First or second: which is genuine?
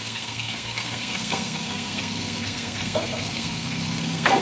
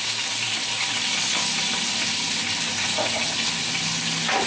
second